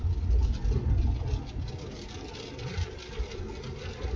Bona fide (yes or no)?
yes